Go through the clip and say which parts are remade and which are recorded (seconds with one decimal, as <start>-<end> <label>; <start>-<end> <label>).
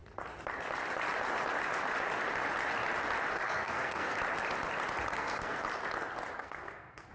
0.0-3.3 recorded; 3.3-4.2 remade; 4.2-5.1 recorded; 5.1-5.6 remade; 5.6-6.4 recorded; 6.4-7.1 remade